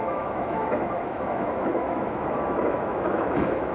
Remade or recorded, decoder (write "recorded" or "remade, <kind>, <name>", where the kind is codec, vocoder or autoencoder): remade, autoencoder, DAC-VAE